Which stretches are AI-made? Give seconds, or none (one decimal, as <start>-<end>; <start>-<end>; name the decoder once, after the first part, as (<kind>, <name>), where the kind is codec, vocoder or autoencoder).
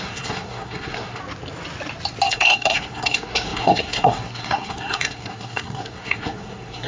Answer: 0.0-1.2 (codec, SNAC); 2.3-6.9